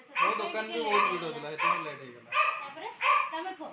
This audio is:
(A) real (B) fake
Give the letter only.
A